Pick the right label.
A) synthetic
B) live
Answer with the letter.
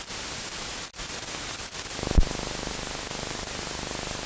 B